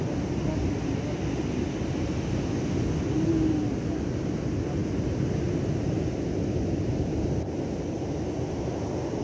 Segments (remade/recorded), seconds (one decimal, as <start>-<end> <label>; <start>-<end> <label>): 0.0-9.2 recorded